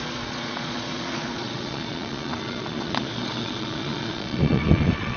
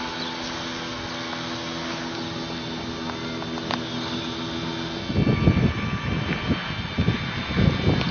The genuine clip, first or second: second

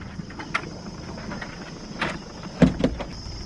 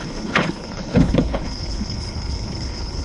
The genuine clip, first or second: first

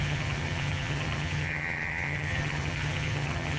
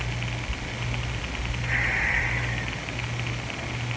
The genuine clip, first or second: second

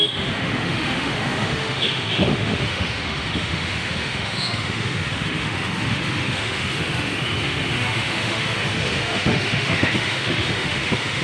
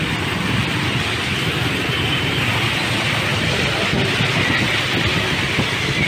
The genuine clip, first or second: second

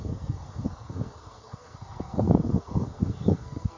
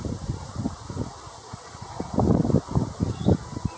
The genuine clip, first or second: second